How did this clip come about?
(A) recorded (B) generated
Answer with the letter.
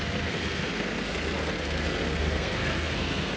B